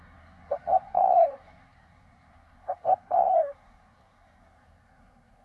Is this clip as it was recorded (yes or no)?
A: no